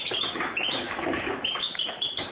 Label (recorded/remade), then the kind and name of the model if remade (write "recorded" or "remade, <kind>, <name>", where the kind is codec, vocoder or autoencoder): remade, autoencoder, DAC-VAE